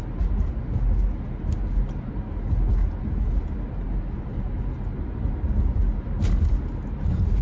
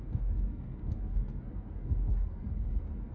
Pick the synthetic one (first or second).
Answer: second